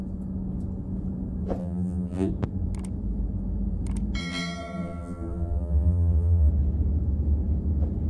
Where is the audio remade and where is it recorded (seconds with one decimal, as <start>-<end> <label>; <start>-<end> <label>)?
0.0-1.6 recorded; 1.6-2.3 remade; 2.3-4.2 recorded; 4.2-6.5 remade; 6.5-8.1 recorded